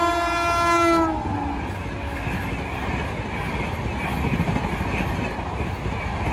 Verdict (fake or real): real